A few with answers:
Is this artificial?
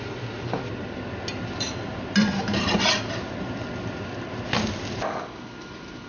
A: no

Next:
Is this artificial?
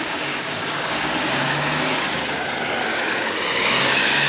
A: yes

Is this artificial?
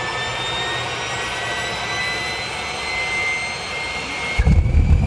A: no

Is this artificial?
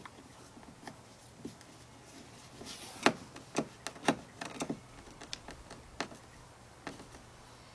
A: no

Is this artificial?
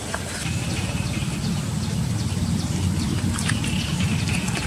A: yes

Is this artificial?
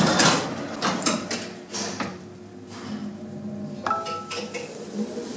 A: no